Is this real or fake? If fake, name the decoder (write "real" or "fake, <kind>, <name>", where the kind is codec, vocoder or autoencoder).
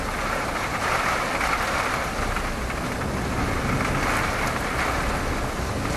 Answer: real